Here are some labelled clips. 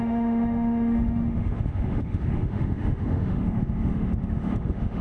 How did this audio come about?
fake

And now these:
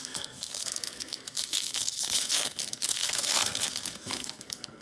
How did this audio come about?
fake